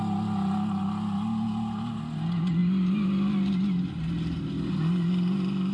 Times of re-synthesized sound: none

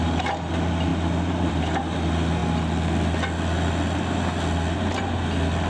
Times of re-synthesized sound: none

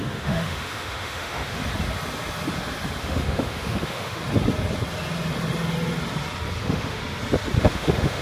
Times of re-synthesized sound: 0.0-1.6 (autoencoder, DAC-VAE); 3.0-4.2; 6.6-7.0; 7.6-8.2

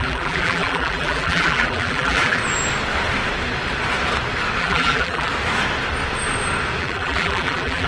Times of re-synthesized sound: 0.0-2.4 (vocoder, BigVGAN v2); 4.6-5.3; 6.8-7.9

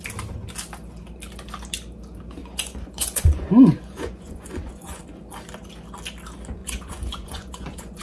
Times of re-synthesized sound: 2.4-5.0 (vocoder, Vocos); 6.6-8.0